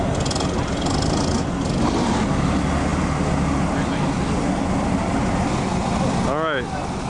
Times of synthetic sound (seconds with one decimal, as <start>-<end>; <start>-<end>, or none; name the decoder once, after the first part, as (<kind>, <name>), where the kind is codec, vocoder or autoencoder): none